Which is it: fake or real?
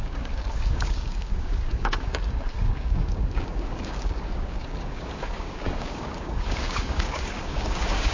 fake